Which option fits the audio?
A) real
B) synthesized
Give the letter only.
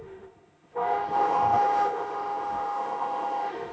B